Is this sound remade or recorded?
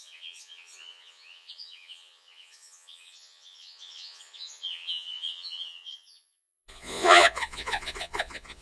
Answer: remade